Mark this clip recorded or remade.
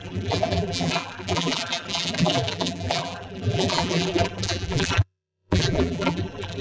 remade